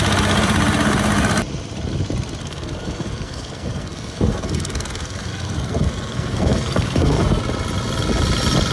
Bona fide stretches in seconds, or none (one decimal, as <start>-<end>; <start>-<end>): 0.0-2.4; 7.4-8.7